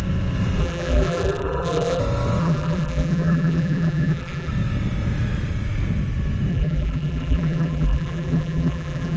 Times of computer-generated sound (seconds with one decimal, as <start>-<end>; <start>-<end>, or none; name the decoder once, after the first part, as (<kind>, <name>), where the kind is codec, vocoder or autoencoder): 0.6-2.0 (vocoder, BigVGAN v2); 2.4-4.5; 6.5-9.2